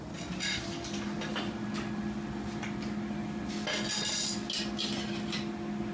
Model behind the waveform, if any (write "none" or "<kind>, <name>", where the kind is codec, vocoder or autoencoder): none